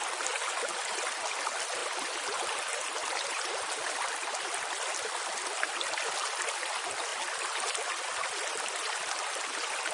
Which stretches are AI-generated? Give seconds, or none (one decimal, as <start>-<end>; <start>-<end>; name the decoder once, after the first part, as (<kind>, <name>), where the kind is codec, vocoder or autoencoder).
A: none